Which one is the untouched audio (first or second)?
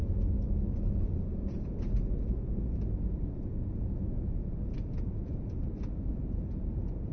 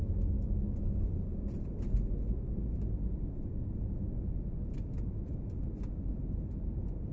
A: second